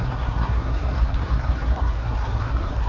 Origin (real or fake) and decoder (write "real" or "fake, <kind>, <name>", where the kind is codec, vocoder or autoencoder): fake, codec, SNAC